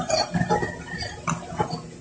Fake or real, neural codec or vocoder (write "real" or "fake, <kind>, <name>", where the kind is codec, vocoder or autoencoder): real